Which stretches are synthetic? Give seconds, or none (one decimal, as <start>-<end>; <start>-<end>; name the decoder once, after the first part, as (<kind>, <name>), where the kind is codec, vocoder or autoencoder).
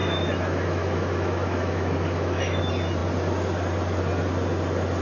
0.0-2.6 (autoencoder, DAC-VAE)